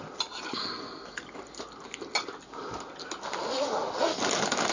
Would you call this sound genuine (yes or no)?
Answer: yes